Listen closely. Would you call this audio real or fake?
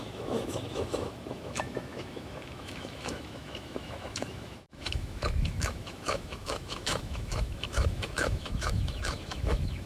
fake